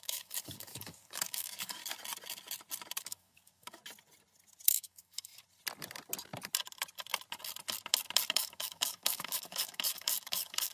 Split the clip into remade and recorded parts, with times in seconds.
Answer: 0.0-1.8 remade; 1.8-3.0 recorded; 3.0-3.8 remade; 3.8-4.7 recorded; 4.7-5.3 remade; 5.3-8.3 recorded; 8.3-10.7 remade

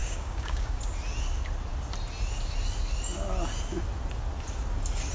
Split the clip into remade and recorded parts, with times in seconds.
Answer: 0.0-0.8 remade; 0.8-5.1 recorded